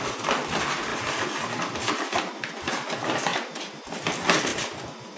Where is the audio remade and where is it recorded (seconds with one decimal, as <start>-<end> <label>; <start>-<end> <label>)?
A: 0.0-4.5 recorded; 4.5-5.2 remade